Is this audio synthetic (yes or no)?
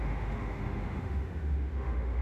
yes